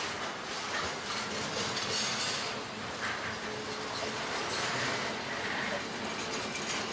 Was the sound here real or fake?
real